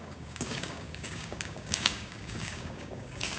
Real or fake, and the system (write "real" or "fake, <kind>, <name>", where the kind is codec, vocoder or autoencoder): fake, codec, DAC